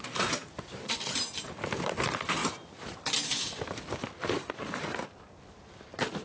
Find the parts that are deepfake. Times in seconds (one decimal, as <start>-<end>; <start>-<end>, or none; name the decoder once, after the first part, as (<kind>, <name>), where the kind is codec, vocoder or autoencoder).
0.4-1.2 (vocoder, BigVGAN v2)